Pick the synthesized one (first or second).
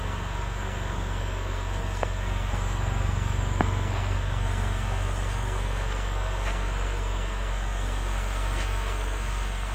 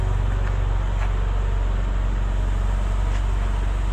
first